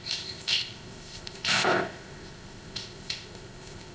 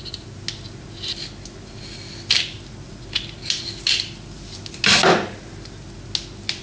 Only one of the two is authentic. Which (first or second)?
second